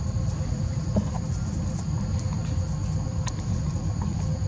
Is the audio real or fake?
real